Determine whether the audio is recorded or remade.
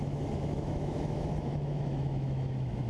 remade